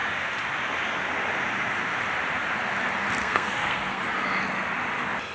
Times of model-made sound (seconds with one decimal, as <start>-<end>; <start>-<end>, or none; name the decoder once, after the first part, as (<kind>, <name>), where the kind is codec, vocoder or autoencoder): 3.2-4.0 (codec, SNAC)